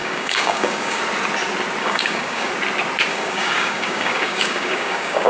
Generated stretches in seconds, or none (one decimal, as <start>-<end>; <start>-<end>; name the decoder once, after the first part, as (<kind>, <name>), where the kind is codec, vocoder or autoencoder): 0.0-1.0 (codec, DAC); 1.8-2.5; 3.1-5.3